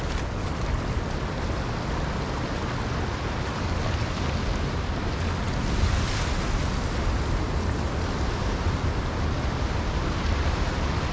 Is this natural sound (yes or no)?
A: yes